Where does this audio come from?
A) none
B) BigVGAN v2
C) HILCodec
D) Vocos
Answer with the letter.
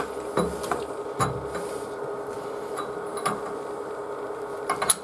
A